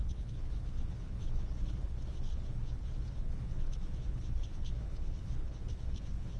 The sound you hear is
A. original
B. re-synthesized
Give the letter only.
B